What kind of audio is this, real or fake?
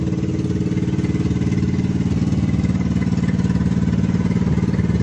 real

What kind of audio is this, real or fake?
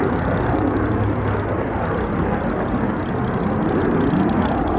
real